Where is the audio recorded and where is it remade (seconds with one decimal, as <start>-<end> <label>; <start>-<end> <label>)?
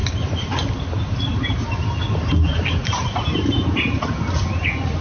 0.0-5.0 recorded